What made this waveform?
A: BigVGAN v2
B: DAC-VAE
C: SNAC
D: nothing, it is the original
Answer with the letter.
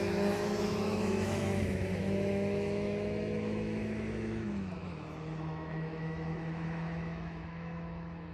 B